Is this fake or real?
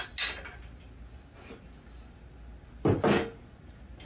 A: real